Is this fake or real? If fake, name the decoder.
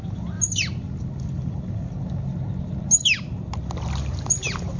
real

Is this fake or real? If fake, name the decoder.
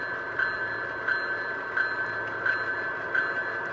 real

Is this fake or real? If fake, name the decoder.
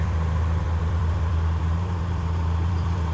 fake, vocoder, BigVGAN v2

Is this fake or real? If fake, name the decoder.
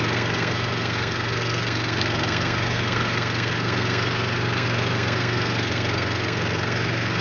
fake, codec, SNAC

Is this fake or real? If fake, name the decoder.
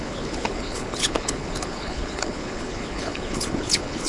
fake, codec, HILCodec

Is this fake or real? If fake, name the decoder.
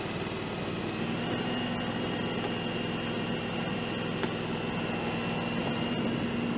real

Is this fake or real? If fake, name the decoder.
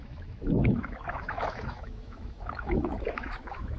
fake, autoencoder, DAC-VAE